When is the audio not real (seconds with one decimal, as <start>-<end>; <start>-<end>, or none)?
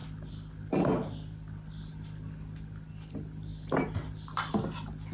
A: none